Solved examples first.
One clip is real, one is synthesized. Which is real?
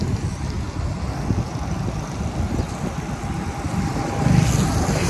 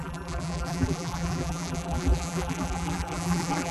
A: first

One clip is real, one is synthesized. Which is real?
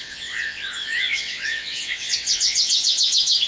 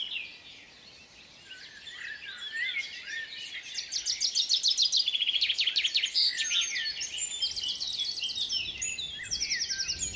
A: second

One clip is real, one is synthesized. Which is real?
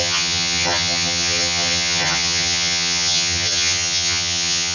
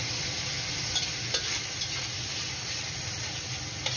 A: second